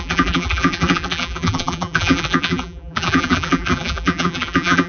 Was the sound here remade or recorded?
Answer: remade